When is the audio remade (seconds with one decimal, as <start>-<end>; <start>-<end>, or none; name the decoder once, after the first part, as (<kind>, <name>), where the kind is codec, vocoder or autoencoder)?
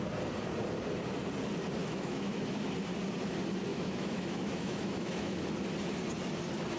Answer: 1.8-2.7 (autoencoder, DAC-VAE); 3.7-5.4